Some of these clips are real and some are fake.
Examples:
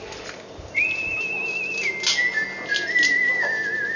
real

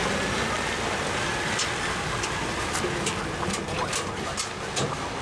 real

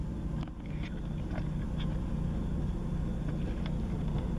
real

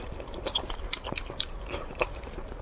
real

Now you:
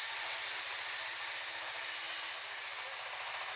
real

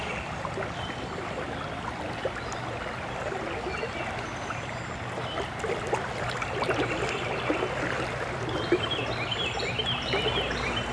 real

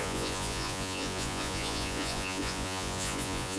fake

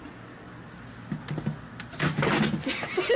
real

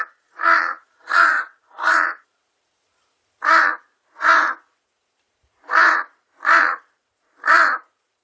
fake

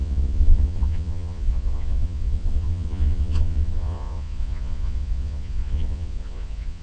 fake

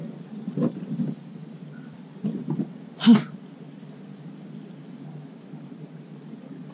real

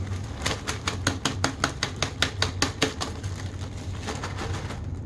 real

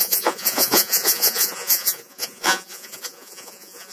fake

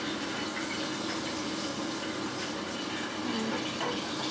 real